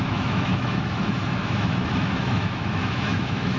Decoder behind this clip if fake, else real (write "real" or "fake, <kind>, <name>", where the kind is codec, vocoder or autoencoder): fake, autoencoder, DAC-VAE